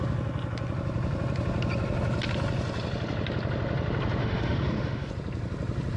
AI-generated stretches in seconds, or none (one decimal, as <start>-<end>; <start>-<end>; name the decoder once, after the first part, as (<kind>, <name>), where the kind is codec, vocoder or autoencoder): 4.2-5.1 (autoencoder, DAC-VAE)